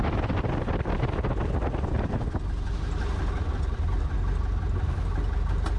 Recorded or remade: recorded